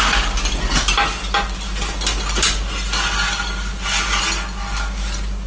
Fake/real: real